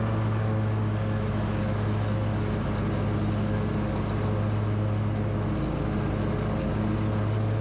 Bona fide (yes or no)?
yes